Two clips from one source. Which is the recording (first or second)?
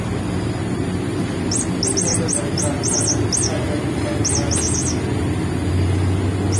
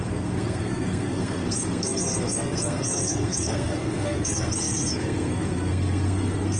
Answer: first